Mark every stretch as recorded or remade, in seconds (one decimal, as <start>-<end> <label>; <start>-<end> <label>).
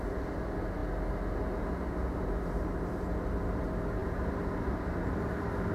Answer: 0.0-5.7 recorded